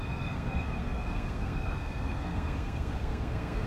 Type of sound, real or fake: fake